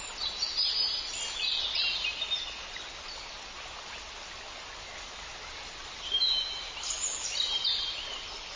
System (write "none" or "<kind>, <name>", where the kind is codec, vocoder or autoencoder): none